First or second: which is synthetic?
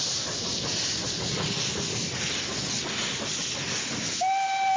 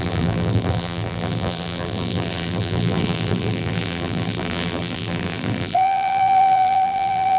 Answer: second